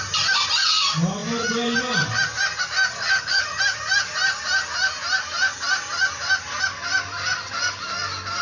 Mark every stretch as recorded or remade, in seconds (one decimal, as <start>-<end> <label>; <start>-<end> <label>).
0.0-3.0 recorded; 3.0-3.6 remade; 3.6-8.4 recorded